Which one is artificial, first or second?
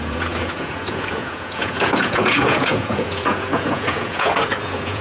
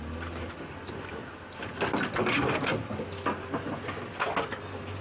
first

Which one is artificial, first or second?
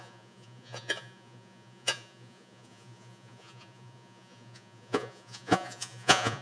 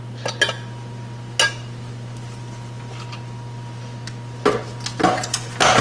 first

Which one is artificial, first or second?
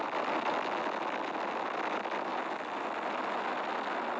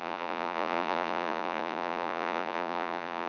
second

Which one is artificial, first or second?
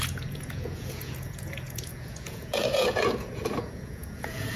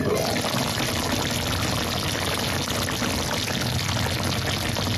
first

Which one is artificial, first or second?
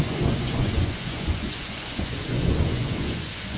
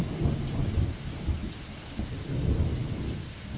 first